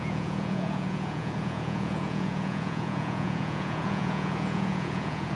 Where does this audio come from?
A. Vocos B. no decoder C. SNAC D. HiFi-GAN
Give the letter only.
A